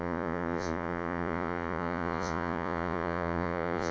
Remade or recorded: remade